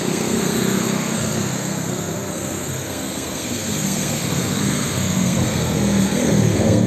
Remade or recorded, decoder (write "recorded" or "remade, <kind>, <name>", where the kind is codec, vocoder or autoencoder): remade, codec, SNAC